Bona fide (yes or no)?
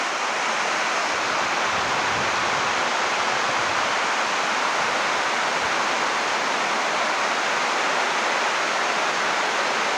yes